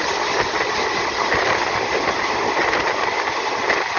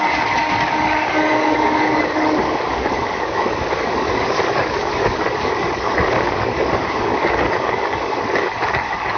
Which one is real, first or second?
first